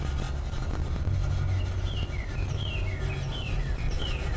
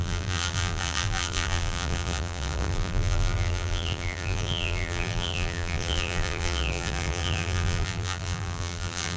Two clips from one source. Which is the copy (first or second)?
second